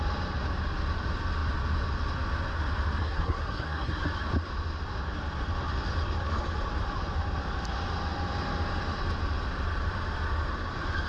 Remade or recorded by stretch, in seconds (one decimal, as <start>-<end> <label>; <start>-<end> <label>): 0.0-3.0 recorded; 3.0-4.0 remade; 4.0-11.1 recorded